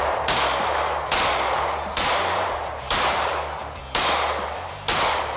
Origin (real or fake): real